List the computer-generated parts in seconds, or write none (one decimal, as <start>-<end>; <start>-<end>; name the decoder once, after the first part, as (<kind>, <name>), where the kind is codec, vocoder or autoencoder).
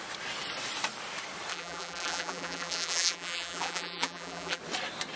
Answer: 1.5-4.6 (vocoder, BigVGAN v2)